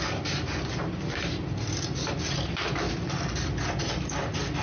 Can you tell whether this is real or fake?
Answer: fake